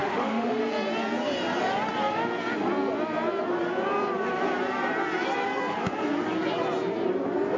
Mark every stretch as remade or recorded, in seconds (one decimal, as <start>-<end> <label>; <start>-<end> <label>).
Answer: 0.0-0.6 remade; 0.6-7.6 recorded